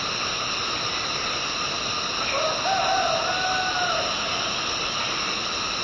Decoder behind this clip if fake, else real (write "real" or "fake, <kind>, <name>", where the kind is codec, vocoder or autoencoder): real